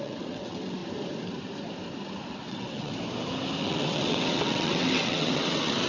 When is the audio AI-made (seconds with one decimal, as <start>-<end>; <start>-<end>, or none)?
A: 0.0-0.8; 2.3-2.9; 3.6-5.9

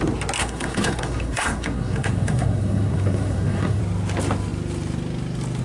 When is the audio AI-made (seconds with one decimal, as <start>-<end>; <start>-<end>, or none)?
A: 0.4-3.8